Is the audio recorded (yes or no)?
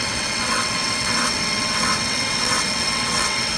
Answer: no